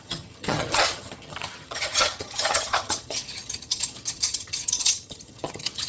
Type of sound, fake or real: fake